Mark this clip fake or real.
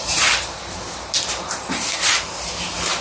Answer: fake